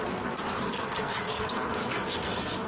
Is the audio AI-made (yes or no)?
yes